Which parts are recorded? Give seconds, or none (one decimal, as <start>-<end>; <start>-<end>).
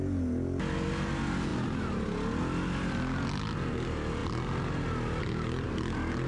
0.0-6.3